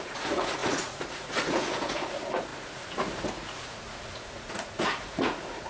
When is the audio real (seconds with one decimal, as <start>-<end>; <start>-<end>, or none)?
none